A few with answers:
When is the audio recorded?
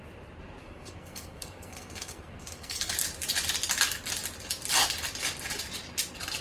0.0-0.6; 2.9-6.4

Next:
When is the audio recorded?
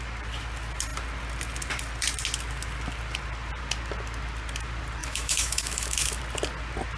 0.0-5.0; 6.2-7.0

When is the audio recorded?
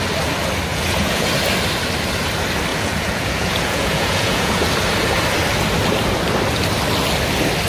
0.0-0.7; 1.3-2.7; 4.6-7.7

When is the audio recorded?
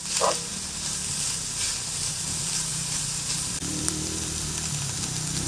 0.0-0.5; 1.2-2.7; 4.5-5.5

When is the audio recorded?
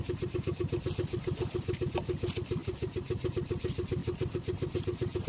0.0-5.3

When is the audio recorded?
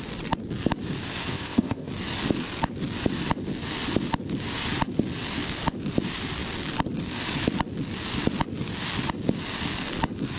0.0-1.3; 1.9-10.4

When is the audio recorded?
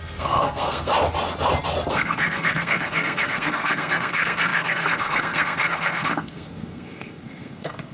0.9-1.9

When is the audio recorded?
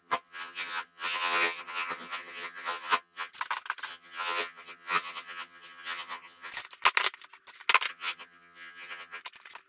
3.3-3.9; 6.5-7.9; 9.2-9.7